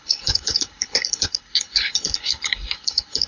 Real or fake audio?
fake